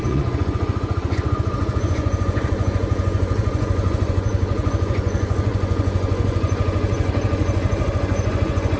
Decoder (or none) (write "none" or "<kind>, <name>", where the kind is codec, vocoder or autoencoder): vocoder, Vocos